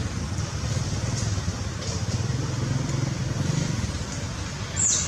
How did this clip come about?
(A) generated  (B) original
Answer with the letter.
B